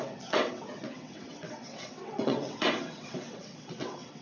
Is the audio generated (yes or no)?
yes